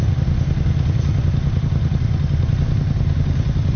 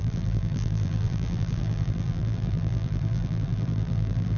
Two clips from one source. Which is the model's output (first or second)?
second